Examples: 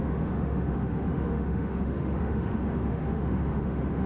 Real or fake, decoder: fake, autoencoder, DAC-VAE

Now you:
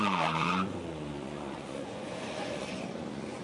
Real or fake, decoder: fake, vocoder, Vocos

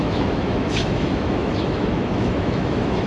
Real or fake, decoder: fake, autoencoder, DAC-VAE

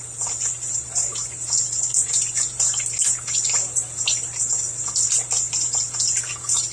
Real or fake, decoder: real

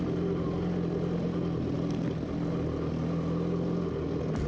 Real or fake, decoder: real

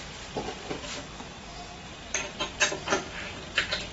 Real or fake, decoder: real